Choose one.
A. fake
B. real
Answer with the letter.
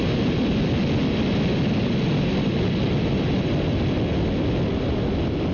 B